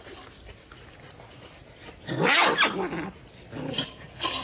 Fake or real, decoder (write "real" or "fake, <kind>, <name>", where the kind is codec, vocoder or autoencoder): real